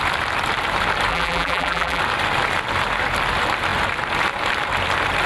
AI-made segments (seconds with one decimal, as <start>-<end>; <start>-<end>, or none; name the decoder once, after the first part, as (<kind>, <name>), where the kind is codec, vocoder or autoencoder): 1.1-2.0 (vocoder, BigVGAN v2)